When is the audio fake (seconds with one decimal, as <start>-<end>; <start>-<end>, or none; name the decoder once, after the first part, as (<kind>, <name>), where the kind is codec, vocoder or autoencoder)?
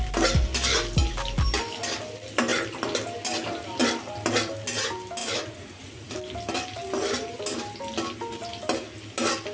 5.2-6.1 (vocoder, Vocos)